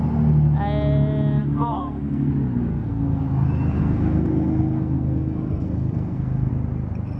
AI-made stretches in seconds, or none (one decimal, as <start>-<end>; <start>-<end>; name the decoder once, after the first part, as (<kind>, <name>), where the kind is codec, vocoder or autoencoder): 1.4-2.3 (codec, SNAC); 2.7-3.2; 3.8-6.5